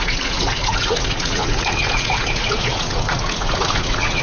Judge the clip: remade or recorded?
remade